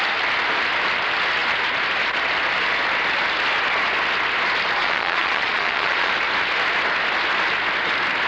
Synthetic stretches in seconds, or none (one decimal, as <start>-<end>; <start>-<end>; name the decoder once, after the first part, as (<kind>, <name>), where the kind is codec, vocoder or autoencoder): 4.8-6.1 (vocoder, Vocos)